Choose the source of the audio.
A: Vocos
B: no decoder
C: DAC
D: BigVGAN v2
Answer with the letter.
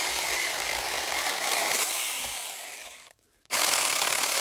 C